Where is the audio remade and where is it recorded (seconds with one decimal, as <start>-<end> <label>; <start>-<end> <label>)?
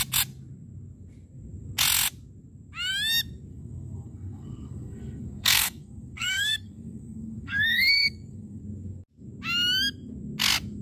0.0-3.5 recorded; 3.5-8.6 remade; 8.6-10.8 recorded